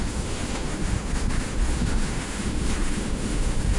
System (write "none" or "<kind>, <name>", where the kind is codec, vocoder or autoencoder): autoencoder, DAC-VAE